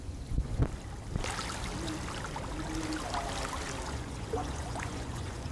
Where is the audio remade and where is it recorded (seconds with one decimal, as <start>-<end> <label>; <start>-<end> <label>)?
0.0-0.6 remade; 0.6-3.9 recorded; 3.9-5.5 remade